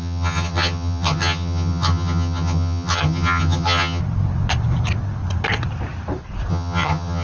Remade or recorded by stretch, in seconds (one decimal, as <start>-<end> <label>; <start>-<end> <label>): 0.0-4.0 remade; 4.0-6.5 recorded; 6.5-7.2 remade